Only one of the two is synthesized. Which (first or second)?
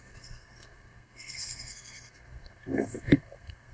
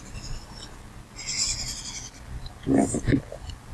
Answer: first